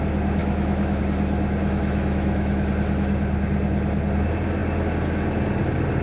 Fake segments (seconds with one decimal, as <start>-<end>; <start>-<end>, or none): 0.4-1.0; 1.6-2.7